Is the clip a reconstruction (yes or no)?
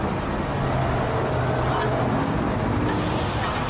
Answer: no